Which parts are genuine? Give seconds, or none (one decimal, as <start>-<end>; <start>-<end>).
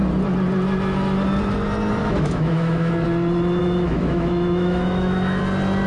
0.0-2.0; 2.9-3.6; 5.4-5.9